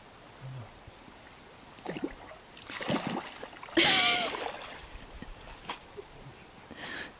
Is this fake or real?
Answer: real